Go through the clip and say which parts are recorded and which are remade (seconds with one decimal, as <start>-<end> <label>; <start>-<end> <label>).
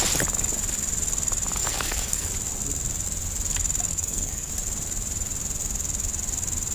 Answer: 0.0-1.6 recorded; 1.6-2.3 remade; 2.3-3.9 recorded; 3.9-4.5 remade; 4.5-6.7 recorded